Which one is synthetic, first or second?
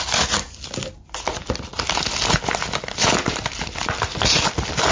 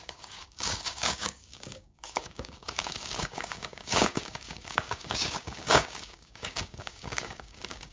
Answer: second